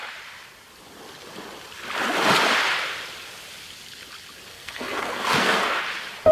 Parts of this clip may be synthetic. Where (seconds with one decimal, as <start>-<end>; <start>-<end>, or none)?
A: 4.5-5.8